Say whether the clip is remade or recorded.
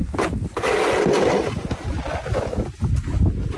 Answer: recorded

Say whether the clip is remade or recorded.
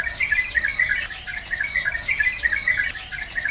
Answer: recorded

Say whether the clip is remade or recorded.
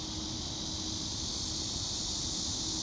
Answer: recorded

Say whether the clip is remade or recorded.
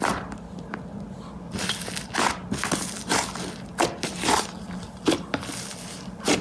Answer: recorded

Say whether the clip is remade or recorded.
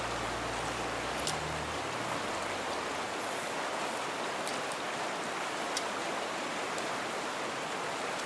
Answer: recorded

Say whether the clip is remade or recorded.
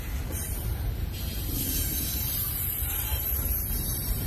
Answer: remade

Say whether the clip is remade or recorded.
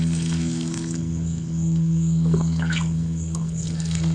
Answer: remade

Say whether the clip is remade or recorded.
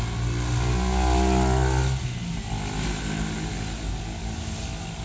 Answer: recorded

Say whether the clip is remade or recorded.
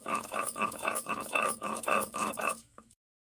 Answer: remade